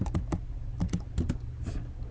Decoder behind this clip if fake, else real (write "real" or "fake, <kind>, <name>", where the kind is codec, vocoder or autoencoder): real